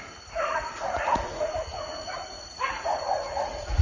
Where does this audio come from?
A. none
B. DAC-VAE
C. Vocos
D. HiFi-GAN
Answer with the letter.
C